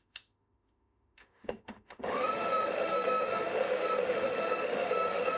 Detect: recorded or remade remade